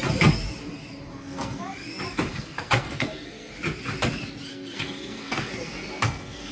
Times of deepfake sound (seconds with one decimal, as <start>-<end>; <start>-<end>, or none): 1.1-1.6; 2.3-3.5; 4.5-6.5